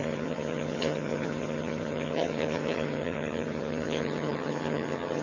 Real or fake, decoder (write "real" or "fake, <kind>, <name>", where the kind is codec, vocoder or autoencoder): fake, vocoder, HiFi-GAN